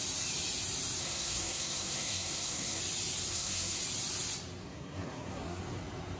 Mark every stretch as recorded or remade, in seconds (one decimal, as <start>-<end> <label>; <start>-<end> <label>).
0.0-1.0 recorded; 1.0-2.8 remade; 2.8-3.3 recorded; 3.3-3.8 remade; 3.8-4.6 recorded; 4.6-5.6 remade; 5.6-6.2 recorded